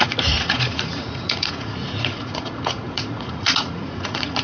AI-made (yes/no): yes